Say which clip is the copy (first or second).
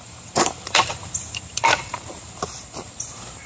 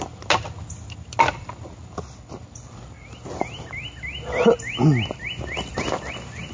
first